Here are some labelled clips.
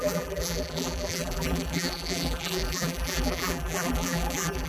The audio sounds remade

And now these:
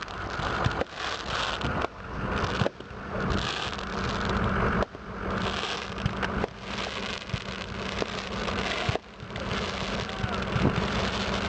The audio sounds recorded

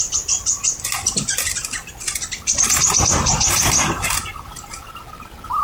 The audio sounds recorded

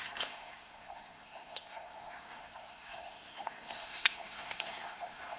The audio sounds remade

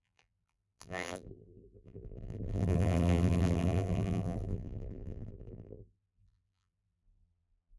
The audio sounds remade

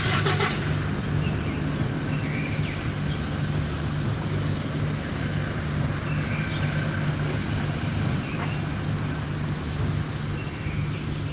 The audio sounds recorded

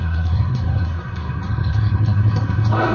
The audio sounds remade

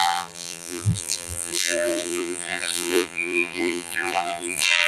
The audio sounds remade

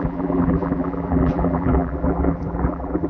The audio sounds remade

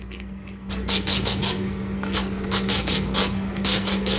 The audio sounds remade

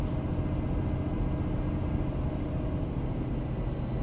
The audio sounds recorded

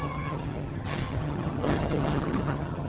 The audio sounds remade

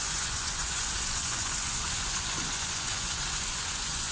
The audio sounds remade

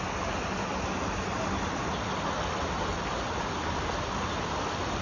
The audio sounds recorded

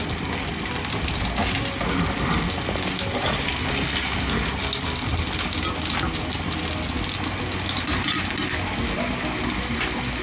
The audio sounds recorded